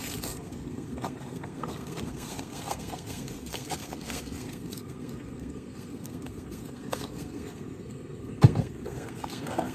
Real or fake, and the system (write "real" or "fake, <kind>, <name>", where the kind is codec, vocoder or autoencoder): fake, codec, SNAC